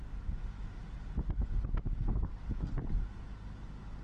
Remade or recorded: recorded